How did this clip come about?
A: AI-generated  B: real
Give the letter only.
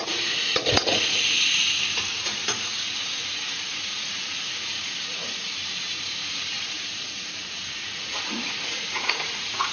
A